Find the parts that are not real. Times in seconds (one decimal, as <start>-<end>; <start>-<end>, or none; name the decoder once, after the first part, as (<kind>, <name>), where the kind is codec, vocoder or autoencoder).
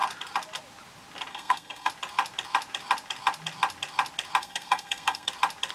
1.3-1.9 (codec, SNAC); 4.4-5.3